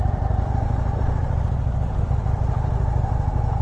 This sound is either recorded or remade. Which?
remade